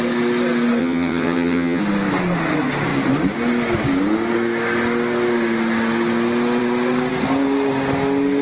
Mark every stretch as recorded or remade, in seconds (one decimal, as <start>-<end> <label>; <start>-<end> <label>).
0.0-0.8 recorded; 0.8-1.8 remade; 1.8-8.4 recorded